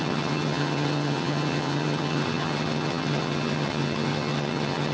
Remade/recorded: remade